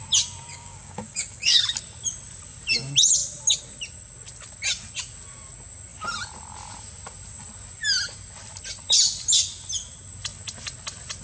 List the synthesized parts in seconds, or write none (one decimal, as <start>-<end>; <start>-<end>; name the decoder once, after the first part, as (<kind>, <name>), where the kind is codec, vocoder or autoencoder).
0.5-1.6 (codec, DAC)